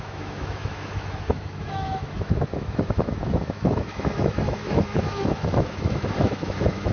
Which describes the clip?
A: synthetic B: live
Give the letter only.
A